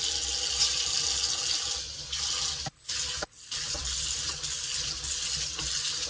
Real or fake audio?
real